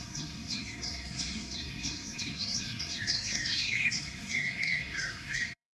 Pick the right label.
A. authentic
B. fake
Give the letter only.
B